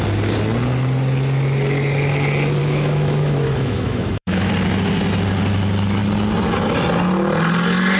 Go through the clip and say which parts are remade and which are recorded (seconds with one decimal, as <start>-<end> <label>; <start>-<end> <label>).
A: 0.0-2.6 recorded; 2.6-4.5 remade; 4.5-8.0 recorded